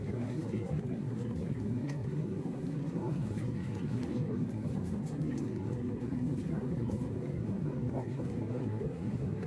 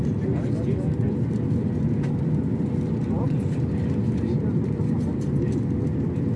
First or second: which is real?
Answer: second